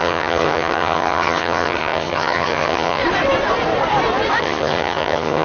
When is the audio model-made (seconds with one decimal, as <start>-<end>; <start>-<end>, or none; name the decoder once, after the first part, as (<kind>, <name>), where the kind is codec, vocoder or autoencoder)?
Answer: 0.0-3.0 (vocoder, HiFi-GAN); 4.4-5.4